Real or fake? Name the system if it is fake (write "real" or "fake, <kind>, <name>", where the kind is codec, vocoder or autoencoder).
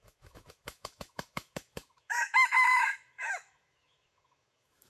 fake, autoencoder, DAC-VAE